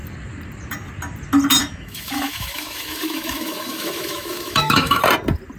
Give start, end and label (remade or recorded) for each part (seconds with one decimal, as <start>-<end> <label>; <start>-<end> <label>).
0.0-1.6 recorded; 1.6-5.0 remade; 5.0-5.6 recorded